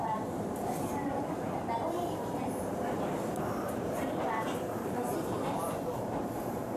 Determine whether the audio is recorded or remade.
remade